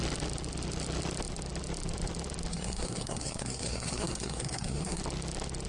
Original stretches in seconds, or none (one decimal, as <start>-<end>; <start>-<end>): 0.0-2.5; 5.0-5.7